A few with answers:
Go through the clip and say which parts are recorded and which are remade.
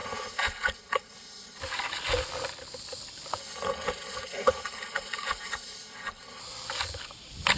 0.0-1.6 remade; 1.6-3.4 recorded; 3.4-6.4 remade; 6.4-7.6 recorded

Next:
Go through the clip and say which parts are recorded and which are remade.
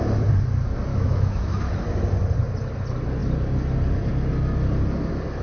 0.0-0.9 recorded; 0.9-1.7 remade; 1.7-5.4 recorded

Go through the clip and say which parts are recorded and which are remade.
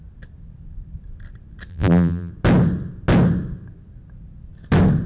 0.0-1.7 recorded; 1.7-2.3 remade; 2.3-5.1 recorded